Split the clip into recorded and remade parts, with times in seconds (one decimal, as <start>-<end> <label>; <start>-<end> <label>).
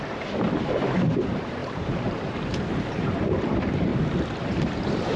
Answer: 0.0-3.9 remade; 3.9-4.4 recorded; 4.4-5.2 remade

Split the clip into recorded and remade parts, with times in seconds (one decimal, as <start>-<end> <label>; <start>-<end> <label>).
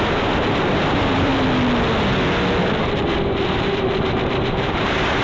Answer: 0.0-1.3 remade; 1.3-2.6 recorded; 2.6-5.2 remade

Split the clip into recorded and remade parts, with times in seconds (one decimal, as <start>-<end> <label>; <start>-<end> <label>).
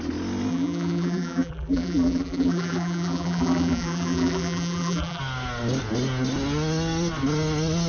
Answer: 0.0-0.5 recorded; 0.5-5.2 remade; 5.2-7.9 recorded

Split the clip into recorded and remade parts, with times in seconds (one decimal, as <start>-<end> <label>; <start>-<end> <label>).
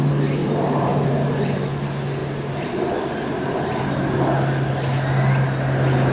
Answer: 0.0-0.4 recorded; 0.4-1.1 remade; 1.1-6.1 recorded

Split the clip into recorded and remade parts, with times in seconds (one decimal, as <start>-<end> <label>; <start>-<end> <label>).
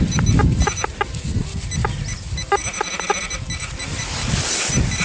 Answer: 0.0-1.8 recorded; 1.8-4.3 remade; 4.3-5.0 recorded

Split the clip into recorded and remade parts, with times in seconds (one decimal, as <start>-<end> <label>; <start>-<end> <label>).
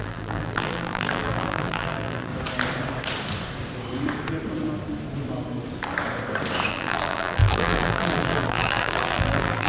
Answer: 0.0-2.3 remade; 2.3-6.7 recorded; 6.7-9.7 remade